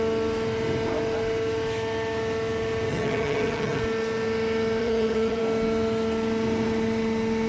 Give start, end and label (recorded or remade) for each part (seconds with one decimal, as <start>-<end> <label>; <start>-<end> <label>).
0.0-2.9 recorded; 2.9-3.8 remade; 3.8-4.8 recorded; 4.8-5.4 remade; 5.4-7.5 recorded